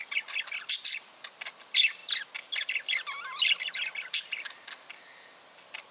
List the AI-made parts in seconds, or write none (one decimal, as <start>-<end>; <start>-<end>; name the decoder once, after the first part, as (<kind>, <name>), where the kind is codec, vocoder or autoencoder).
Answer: none

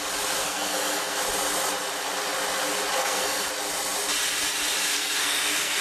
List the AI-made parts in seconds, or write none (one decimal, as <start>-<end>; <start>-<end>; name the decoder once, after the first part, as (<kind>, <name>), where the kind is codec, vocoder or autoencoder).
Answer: 0.4-1.2 (codec, SNAC); 3.0-3.5; 4.9-5.8